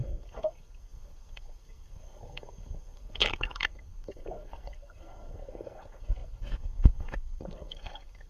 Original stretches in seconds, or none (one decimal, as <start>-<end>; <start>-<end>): none